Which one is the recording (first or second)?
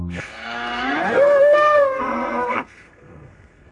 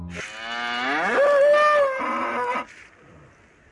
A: second